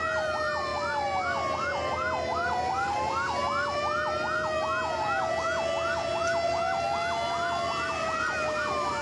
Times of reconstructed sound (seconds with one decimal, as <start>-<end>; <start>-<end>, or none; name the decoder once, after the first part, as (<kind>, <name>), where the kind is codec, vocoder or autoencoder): none